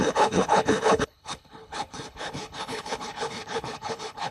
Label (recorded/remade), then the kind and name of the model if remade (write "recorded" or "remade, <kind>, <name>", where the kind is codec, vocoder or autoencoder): remade, codec, HILCodec